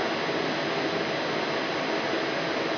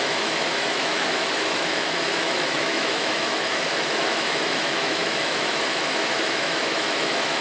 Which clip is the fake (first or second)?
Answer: second